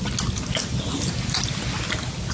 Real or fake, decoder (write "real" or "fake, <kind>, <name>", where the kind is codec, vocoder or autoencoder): real